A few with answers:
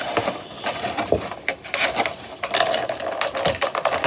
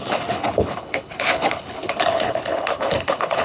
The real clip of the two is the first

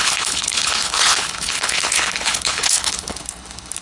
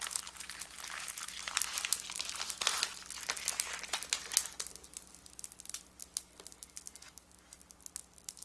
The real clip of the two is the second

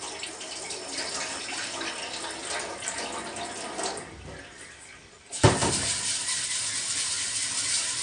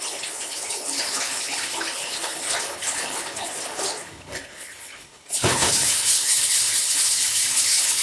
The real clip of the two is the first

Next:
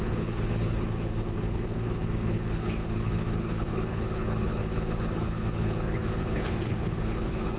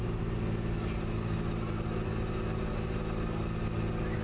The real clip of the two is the second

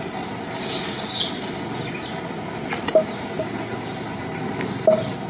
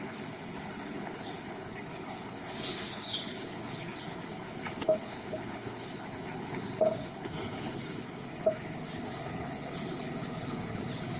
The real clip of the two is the first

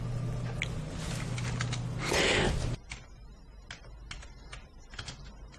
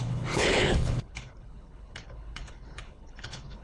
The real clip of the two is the first